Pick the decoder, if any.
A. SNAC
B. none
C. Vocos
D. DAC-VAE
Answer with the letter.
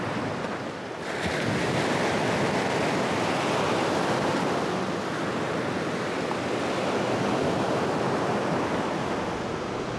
B